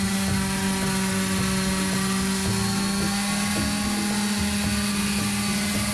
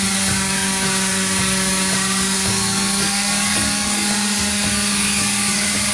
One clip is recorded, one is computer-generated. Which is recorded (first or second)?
first